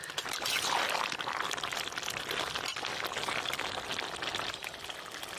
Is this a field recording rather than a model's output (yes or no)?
yes